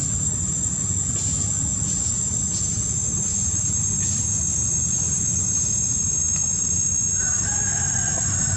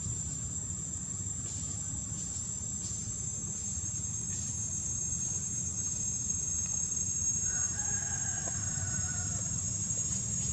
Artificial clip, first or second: second